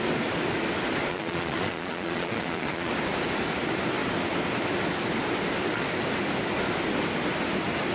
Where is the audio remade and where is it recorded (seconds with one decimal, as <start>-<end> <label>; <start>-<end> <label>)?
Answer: 0.0-1.1 recorded; 1.1-2.9 remade; 2.9-7.9 recorded